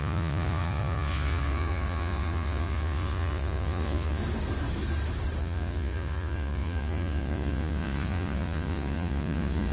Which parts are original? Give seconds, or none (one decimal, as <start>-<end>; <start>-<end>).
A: 4.2-5.4